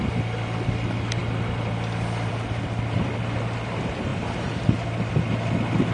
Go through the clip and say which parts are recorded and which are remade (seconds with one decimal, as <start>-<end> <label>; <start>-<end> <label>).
0.0-5.9 recorded